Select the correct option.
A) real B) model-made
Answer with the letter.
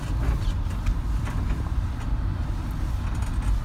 A